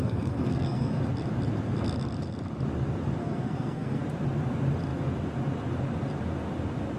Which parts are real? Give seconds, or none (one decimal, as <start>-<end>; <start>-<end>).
1.0-3.2; 4.0-7.0